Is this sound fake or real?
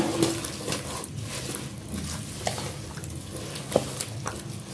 real